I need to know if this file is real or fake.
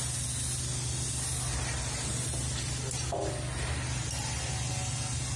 real